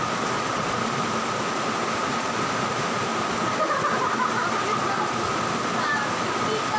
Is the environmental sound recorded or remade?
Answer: recorded